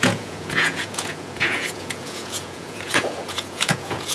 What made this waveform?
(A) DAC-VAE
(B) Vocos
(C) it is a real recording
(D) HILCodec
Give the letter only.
B